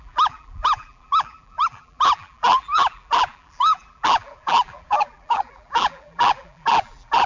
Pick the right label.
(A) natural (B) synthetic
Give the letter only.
B